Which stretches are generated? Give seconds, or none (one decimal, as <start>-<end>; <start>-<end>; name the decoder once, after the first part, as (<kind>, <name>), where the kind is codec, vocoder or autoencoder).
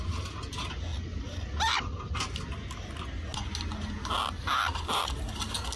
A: none